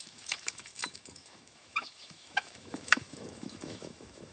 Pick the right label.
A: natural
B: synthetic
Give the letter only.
B